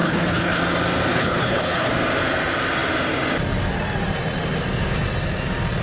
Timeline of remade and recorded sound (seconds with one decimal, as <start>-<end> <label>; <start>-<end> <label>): 0.0-0.6 remade; 0.6-1.1 recorded; 1.1-1.9 remade; 1.9-5.8 recorded